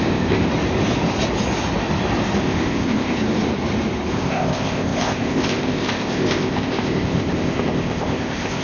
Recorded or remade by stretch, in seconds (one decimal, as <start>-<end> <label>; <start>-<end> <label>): 0.0-0.5 remade; 0.5-2.4 recorded; 2.4-3.2 remade; 3.2-4.1 recorded; 4.1-8.6 remade